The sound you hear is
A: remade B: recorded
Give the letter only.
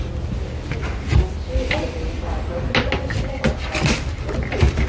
B